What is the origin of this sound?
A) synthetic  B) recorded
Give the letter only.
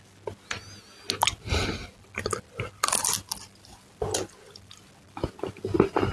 B